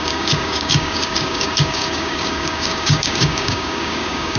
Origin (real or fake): fake